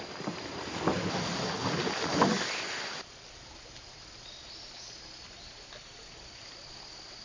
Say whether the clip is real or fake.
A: real